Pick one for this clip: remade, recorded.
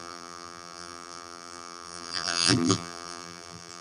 remade